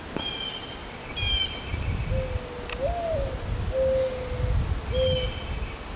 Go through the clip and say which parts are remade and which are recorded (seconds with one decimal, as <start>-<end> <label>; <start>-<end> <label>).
0.0-6.0 recorded